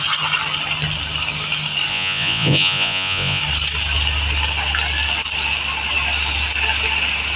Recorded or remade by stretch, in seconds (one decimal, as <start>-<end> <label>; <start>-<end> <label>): 0.0-1.9 recorded; 1.9-3.4 remade; 3.4-7.4 recorded